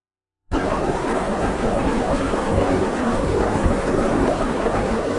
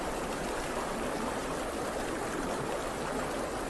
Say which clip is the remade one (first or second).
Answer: first